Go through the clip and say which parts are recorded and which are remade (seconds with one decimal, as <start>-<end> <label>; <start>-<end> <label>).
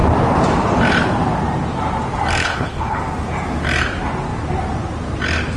0.0-2.4 recorded; 2.4-3.0 remade; 3.0-5.6 recorded